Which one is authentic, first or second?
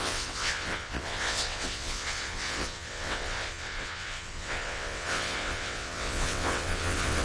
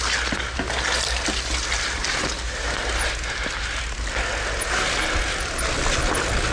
second